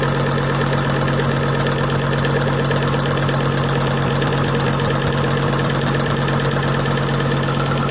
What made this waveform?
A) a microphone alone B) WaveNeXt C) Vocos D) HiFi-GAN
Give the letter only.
A